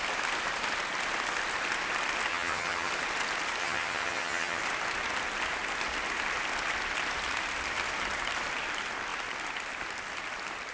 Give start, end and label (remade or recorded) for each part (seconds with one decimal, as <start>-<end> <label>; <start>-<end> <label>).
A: 0.0-2.3 recorded; 2.3-2.9 remade; 2.9-3.6 recorded; 3.6-4.6 remade; 4.6-10.7 recorded